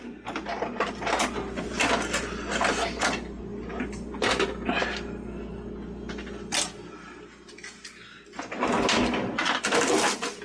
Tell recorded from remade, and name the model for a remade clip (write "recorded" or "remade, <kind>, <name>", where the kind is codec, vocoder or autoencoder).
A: recorded